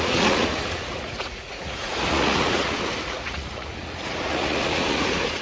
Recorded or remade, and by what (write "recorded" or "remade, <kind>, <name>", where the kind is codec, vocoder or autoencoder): remade, vocoder, Vocos